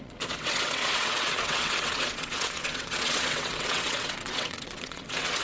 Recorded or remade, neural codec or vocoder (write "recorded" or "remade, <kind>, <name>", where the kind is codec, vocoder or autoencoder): remade, vocoder, WaveNeXt